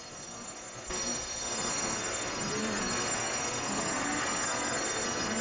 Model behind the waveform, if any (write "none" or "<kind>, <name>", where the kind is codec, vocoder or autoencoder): codec, SNAC